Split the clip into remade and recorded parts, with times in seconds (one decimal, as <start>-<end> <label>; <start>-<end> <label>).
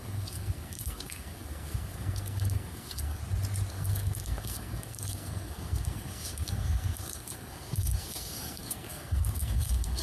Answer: 0.0-3.2 remade; 3.2-3.7 recorded; 3.7-10.0 remade